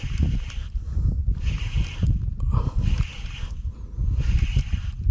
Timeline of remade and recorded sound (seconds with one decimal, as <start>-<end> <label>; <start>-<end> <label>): 0.0-5.1 recorded